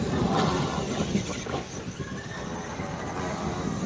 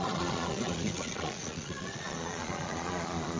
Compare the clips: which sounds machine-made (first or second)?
second